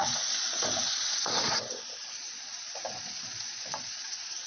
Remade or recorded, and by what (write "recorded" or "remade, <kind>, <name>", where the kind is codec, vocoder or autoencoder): remade, vocoder, Vocos